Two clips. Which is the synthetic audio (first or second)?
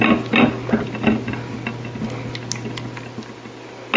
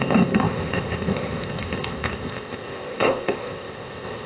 second